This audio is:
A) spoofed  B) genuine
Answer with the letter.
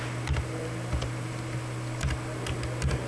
B